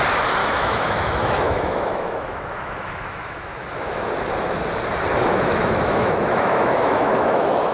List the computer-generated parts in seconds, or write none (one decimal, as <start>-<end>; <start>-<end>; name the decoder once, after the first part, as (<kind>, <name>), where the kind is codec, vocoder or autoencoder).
0.4-4.1 (autoencoder, DAC-VAE); 5.2-7.7